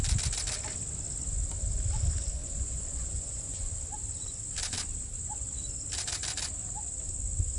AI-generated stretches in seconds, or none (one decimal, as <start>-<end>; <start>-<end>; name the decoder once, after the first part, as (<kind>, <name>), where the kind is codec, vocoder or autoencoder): 2.4-3.7 (vocoder, Vocos)